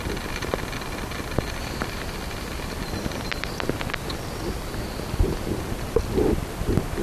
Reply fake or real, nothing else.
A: real